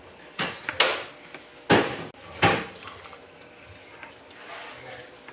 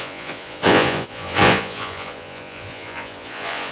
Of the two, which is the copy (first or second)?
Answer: second